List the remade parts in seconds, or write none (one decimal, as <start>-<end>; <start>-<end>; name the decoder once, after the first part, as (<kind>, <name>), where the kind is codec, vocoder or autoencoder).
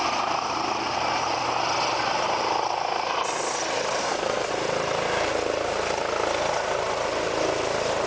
4.0-4.5 (codec, SNAC)